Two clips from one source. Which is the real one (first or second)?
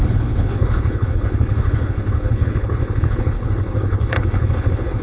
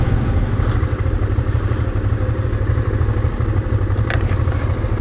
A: second